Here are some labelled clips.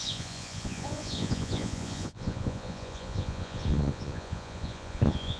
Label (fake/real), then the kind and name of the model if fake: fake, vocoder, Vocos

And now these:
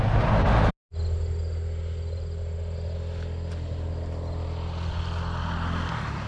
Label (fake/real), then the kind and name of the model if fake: real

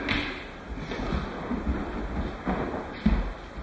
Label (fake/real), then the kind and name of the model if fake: real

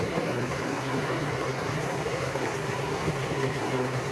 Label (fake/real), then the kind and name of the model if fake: fake, codec, SNAC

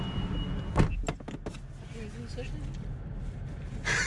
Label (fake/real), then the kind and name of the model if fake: real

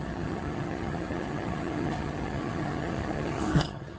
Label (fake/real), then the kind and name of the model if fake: fake, vocoder, HiFi-GAN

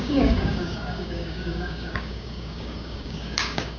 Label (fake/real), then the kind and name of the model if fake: fake, codec, DAC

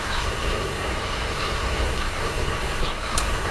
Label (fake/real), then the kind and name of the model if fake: fake, codec, SNAC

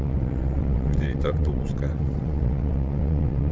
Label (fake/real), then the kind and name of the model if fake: fake, vocoder, WaveNeXt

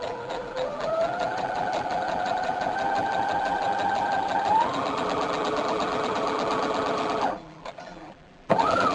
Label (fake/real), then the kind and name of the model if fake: fake, vocoder, BigVGAN v2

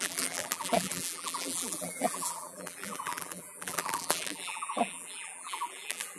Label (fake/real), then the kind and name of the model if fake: fake, vocoder, BigVGAN v2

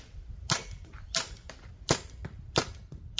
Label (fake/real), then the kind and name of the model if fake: fake, vocoder, BigVGAN v2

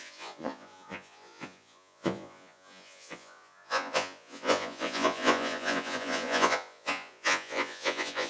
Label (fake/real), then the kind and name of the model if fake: fake, vocoder, Vocos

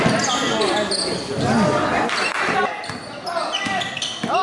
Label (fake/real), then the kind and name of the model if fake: real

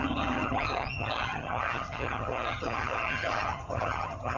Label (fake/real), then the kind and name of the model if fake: fake, vocoder, HiFi-GAN